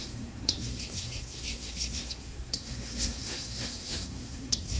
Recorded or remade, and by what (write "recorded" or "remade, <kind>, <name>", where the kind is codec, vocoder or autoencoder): remade, codec, SNAC